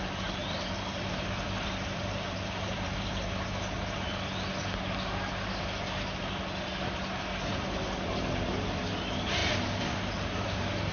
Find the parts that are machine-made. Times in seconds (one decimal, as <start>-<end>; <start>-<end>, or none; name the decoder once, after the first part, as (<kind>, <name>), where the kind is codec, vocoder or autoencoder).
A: 0.4-3.2 (vocoder, BigVGAN v2); 9.4-10.1